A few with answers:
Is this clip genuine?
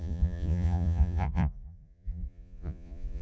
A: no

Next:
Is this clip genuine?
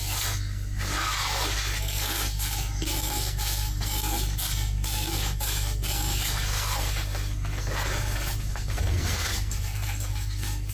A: no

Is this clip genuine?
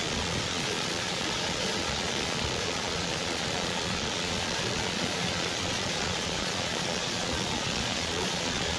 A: no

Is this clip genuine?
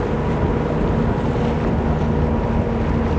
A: yes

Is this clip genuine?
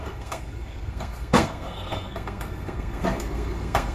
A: no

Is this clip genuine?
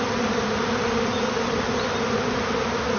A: yes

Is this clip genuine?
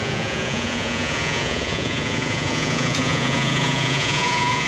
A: no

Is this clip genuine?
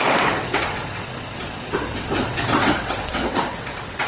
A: no